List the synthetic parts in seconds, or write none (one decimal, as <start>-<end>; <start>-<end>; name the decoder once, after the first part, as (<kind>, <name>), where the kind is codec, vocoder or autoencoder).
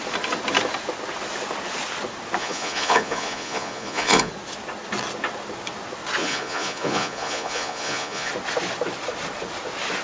2.4-4.3 (vocoder, Vocos); 6.2-8.3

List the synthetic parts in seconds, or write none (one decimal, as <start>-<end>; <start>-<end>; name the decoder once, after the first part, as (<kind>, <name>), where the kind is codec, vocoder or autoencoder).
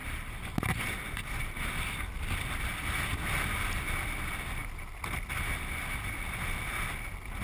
none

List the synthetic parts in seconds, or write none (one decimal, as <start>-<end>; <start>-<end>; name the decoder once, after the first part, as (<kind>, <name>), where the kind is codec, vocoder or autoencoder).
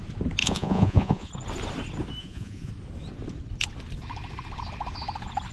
0.4-1.3 (vocoder, Vocos); 2.2-2.7